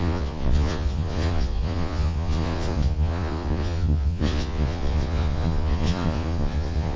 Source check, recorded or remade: remade